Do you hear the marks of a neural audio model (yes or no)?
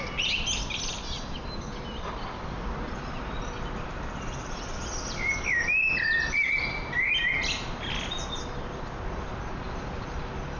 no